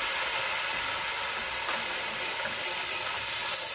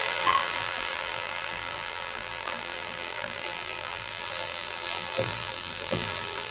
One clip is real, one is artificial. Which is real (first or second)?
first